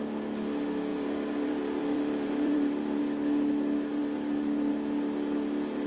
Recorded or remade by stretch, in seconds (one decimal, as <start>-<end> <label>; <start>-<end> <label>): 0.0-0.9 recorded; 0.9-3.0 remade; 3.0-4.0 recorded; 4.0-4.7 remade; 4.7-5.9 recorded